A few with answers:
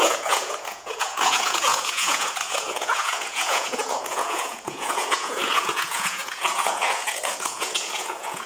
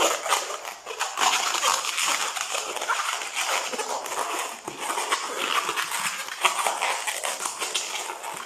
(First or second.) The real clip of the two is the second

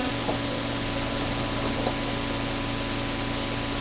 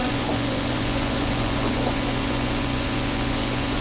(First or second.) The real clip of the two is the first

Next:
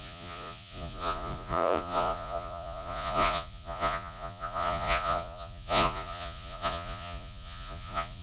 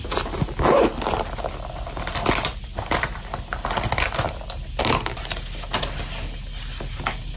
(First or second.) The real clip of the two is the second